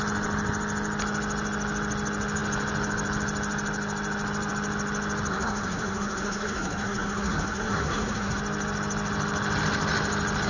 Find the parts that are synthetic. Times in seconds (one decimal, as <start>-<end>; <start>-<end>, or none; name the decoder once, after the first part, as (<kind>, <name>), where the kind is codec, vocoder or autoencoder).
5.3-8.4 (codec, SNAC)